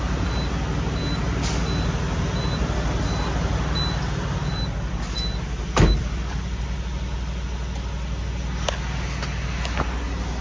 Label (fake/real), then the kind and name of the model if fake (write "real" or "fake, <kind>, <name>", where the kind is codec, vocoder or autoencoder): real